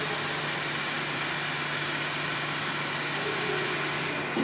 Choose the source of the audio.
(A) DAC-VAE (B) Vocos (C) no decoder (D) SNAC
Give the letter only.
C